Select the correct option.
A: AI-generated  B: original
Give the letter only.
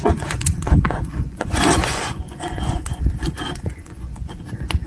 A